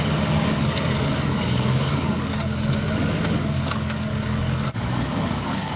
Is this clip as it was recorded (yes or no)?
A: no